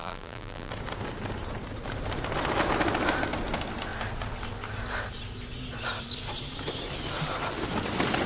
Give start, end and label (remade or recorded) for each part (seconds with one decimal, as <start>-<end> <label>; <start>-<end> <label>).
0.0-0.7 remade; 0.7-8.3 recorded